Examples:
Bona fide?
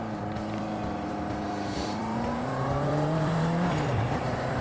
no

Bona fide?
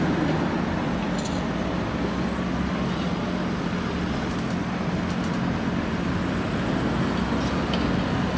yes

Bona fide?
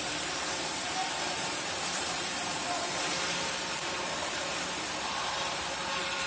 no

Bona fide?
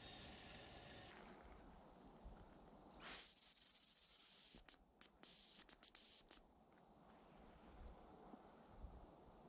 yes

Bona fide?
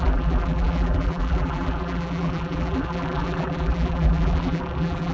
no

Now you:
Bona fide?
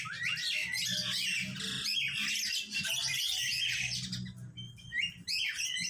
yes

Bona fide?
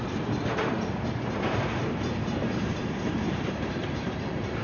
no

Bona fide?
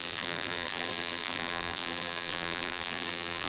no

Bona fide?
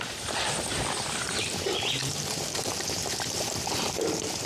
no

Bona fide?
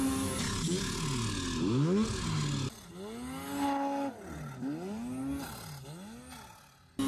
yes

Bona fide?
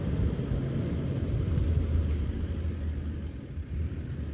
yes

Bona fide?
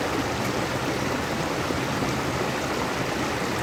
no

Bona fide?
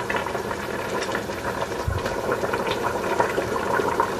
no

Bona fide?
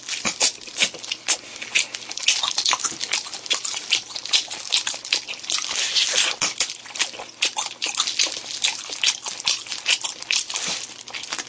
yes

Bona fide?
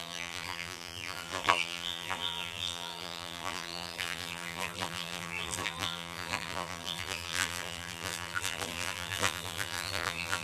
no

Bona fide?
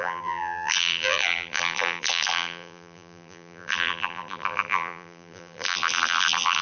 no